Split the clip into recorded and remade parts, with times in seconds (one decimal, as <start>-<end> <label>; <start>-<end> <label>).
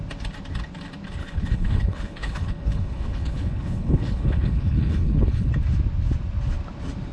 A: 0.0-1.2 recorded; 1.2-5.5 remade; 5.5-7.1 recorded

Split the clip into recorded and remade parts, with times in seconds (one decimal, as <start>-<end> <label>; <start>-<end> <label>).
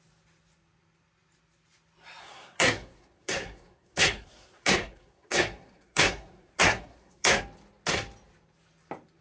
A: 0.0-2.2 recorded; 2.2-7.4 remade; 7.4-9.2 recorded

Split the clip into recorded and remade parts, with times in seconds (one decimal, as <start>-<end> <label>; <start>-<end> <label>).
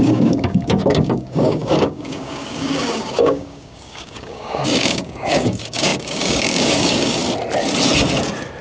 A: 0.0-7.2 remade; 7.2-8.6 recorded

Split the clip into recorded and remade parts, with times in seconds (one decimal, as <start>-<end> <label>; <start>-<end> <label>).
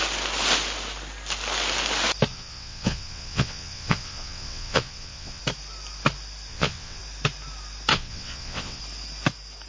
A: 0.0-2.3 recorded; 2.3-5.4 remade; 5.4-6.5 recorded; 6.5-7.0 remade; 7.0-7.9 recorded; 7.9-8.8 remade; 8.8-9.7 recorded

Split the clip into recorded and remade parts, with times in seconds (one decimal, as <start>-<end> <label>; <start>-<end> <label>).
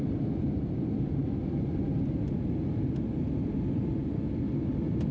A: 0.0-5.1 recorded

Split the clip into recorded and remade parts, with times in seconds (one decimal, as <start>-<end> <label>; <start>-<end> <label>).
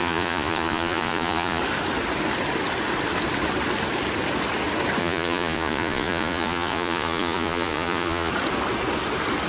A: 0.0-1.6 remade; 1.6-5.0 recorded; 5.0-8.3 remade; 8.3-9.5 recorded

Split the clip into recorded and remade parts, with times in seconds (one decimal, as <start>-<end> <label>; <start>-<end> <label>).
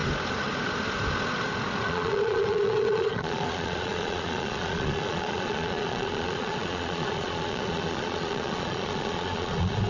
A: 0.0-1.8 recorded; 1.8-9.9 remade